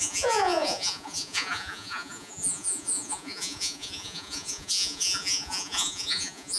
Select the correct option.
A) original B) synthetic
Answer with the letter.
B